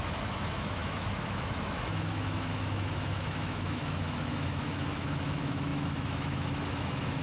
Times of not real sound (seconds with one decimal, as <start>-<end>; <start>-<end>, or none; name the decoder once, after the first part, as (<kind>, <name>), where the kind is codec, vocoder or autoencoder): 0.0-7.2 (autoencoder, DAC-VAE)